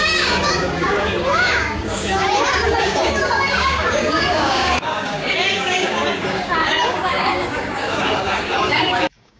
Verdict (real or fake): fake